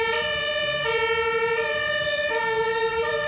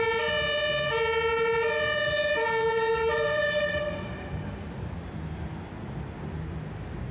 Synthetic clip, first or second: first